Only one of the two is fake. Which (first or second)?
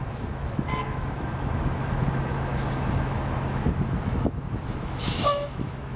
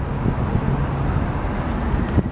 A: first